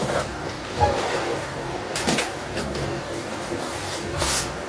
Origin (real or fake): fake